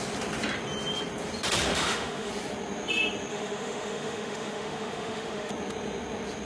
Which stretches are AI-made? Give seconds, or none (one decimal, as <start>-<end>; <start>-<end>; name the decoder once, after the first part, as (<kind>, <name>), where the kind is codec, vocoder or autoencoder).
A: 1.7-2.3 (autoencoder, DAC-VAE); 3.3-5.5